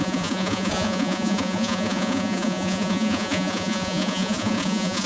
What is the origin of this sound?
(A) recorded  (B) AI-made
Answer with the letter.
B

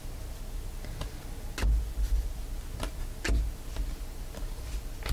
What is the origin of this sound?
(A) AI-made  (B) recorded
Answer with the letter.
B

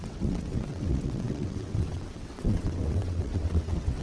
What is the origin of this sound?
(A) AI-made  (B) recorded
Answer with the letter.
A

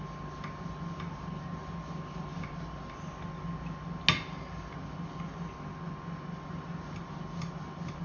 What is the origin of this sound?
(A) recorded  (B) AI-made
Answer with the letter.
A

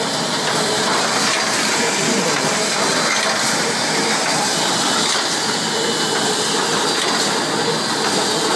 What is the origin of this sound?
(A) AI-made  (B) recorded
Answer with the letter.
B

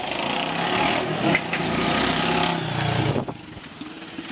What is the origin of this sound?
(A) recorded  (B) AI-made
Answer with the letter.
A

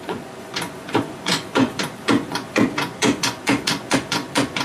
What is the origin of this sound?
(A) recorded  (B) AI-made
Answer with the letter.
B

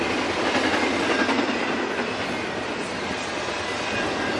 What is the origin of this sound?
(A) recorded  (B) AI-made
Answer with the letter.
A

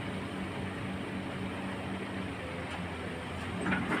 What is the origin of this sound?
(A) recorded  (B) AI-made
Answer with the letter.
A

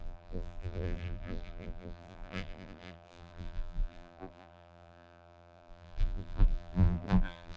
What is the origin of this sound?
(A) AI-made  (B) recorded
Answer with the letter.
A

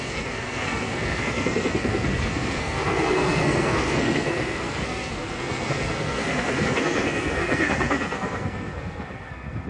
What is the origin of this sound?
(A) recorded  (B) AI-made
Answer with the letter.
B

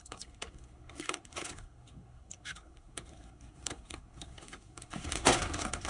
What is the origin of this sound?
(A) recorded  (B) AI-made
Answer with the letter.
B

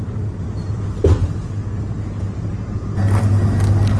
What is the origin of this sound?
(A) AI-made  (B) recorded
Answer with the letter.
B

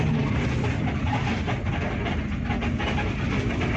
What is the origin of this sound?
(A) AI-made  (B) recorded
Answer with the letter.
B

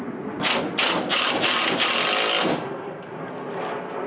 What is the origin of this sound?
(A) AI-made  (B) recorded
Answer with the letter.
B